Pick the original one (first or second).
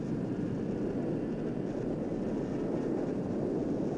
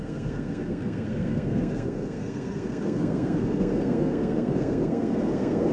first